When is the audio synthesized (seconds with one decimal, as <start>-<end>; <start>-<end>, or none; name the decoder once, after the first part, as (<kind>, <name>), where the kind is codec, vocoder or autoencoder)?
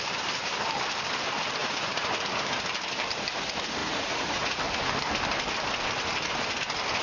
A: 1.6-2.1 (vocoder, Vocos); 3.8-4.6